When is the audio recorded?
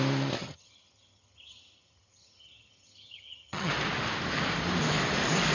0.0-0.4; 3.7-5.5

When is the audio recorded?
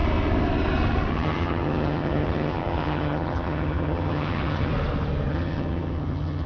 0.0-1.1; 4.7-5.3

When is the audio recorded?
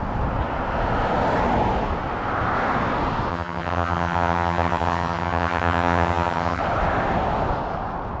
0.0-3.3; 6.6-8.2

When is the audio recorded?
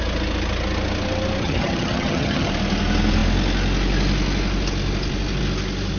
0.0-1.4; 2.5-6.0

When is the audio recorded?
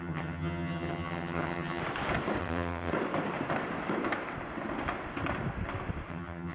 1.8-2.4; 2.9-6.1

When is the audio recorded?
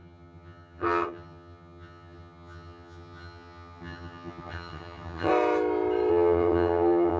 5.3-6.1